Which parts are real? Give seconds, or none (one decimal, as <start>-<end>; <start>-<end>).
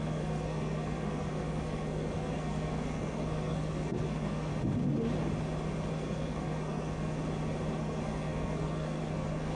4.5-5.9; 7.2-7.8